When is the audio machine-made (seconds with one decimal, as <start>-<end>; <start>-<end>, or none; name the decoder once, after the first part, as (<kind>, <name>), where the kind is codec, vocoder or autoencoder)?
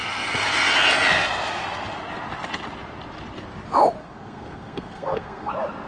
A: 4.0-5.5 (codec, SNAC)